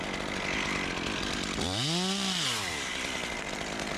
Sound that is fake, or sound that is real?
real